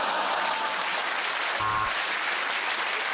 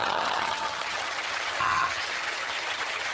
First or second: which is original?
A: first